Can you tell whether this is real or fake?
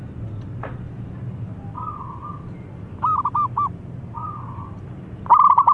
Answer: real